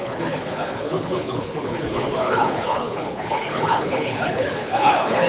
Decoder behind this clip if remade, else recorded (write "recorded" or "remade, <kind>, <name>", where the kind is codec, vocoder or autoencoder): remade, codec, HILCodec